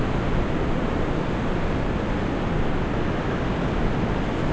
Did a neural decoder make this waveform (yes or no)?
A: no